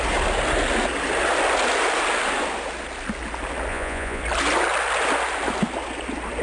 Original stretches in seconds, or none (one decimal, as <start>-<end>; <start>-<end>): 0.0-3.7; 4.2-6.4